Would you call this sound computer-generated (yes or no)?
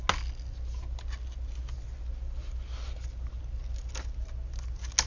no